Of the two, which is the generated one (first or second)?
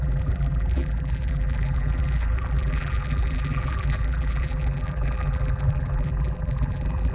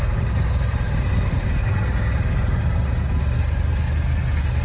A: first